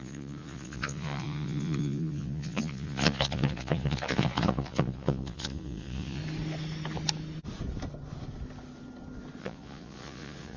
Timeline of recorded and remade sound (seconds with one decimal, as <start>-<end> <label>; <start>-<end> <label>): 0.0-6.2 remade; 6.2-9.4 recorded; 9.4-10.6 remade